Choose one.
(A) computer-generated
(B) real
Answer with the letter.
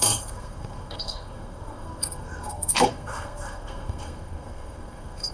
A